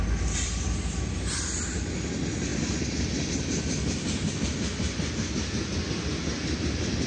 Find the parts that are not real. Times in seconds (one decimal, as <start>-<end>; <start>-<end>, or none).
none

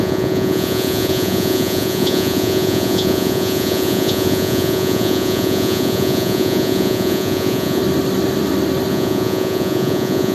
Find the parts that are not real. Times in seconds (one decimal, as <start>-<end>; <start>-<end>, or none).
0.0-7.8; 8.9-10.3

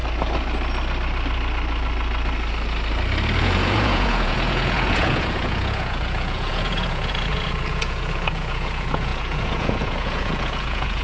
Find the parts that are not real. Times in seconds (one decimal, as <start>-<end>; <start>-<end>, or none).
3.4-11.0

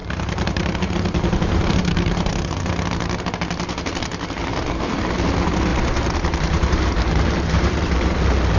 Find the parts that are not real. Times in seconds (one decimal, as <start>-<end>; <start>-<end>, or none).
0.0-2.7; 4.4-5.0; 5.7-8.2

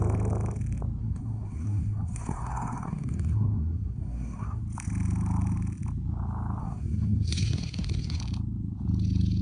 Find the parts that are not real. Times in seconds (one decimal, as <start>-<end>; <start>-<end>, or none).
1.0-4.6; 6.6-8.2

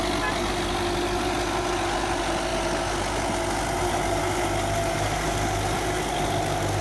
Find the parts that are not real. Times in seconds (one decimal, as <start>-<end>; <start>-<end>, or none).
none

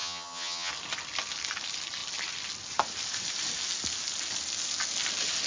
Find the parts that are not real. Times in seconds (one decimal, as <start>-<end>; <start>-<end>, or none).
0.0-0.7

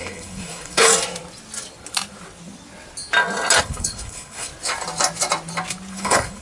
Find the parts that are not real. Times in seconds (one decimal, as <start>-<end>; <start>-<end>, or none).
0.0-0.9; 3.6-4.5; 5.9-6.4